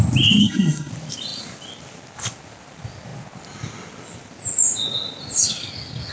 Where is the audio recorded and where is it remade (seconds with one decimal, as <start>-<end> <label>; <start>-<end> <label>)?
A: 0.0-0.4 recorded; 0.4-0.9 remade; 0.9-6.1 recorded